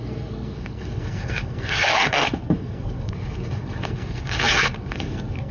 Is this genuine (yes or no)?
no